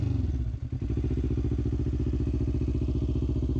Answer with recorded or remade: recorded